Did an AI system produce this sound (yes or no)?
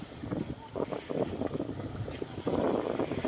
no